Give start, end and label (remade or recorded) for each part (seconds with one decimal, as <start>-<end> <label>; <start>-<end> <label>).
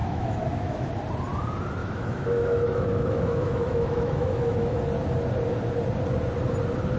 0.0-0.9 remade; 0.9-1.8 recorded; 1.8-4.8 remade; 4.8-7.0 recorded